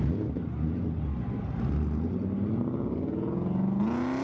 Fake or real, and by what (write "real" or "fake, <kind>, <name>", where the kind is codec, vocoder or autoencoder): real